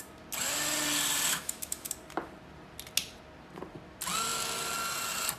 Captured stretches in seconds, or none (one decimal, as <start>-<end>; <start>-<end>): 0.0-1.3; 1.9-5.4